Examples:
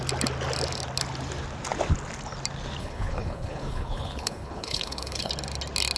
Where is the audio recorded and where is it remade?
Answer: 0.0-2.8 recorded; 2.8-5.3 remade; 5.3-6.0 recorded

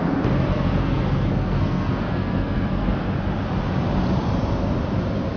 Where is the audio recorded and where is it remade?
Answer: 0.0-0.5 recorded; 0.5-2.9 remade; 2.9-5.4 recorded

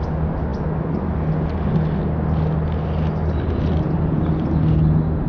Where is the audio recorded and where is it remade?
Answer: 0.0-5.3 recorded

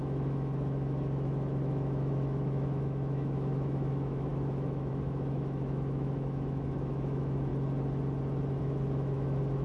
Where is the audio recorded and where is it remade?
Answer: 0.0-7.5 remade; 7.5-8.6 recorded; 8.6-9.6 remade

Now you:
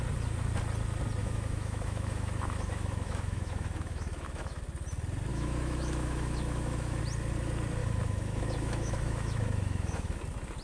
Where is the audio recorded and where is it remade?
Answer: 0.0-1.2 recorded; 1.2-4.6 remade; 4.6-5.3 recorded; 5.3-7.0 remade; 7.0-7.8 recorded; 7.8-10.2 remade; 10.2-10.6 recorded

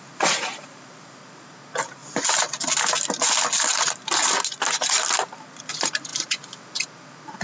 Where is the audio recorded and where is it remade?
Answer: 0.0-2.0 remade; 2.0-5.6 recorded; 5.6-7.4 remade